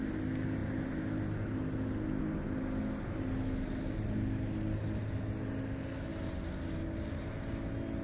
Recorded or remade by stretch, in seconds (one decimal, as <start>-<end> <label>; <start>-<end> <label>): 0.0-8.0 recorded